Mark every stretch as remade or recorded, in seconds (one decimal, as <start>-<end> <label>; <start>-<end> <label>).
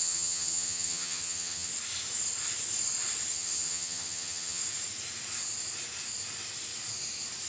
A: 0.0-1.7 remade; 1.7-3.3 recorded; 3.3-4.6 remade; 4.6-7.5 recorded